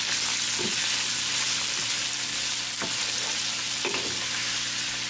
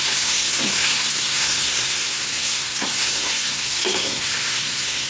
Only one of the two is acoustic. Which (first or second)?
first